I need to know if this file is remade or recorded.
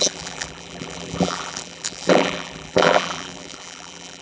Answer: remade